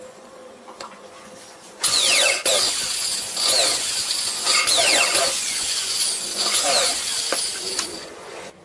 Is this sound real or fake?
fake